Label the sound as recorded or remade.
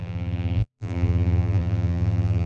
remade